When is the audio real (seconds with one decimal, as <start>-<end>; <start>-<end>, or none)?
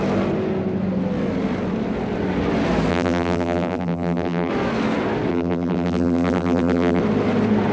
0.0-2.9; 4.5-5.3; 7.0-7.7